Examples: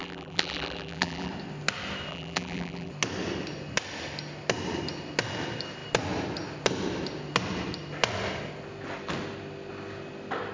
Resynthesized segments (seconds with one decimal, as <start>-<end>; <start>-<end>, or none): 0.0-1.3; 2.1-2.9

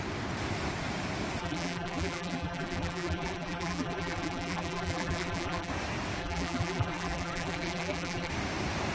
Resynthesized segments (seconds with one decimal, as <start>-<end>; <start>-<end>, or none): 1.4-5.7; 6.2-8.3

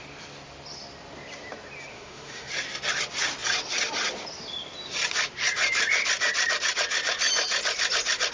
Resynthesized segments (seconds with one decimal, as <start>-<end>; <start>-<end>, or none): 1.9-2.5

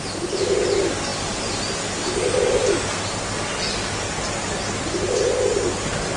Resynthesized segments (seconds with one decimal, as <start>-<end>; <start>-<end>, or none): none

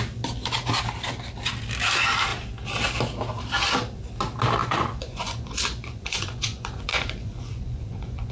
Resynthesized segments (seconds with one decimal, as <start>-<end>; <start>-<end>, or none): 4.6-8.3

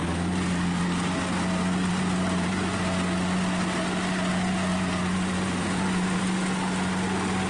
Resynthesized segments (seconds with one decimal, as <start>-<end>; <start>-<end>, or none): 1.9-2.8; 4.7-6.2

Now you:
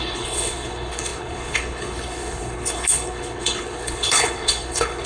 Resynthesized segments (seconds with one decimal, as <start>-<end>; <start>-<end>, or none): 0.0-5.1